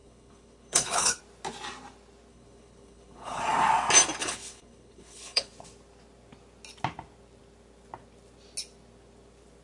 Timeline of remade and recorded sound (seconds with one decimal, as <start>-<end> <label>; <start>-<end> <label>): 0.0-1.2 remade; 1.2-2.3 recorded; 2.3-3.4 remade; 3.4-4.2 recorded; 4.2-5.5 remade; 5.5-9.6 recorded